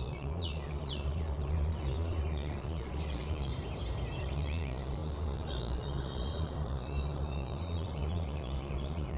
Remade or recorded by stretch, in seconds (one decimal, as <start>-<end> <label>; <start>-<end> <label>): 0.0-3.5 remade; 3.5-4.2 recorded; 4.2-9.2 remade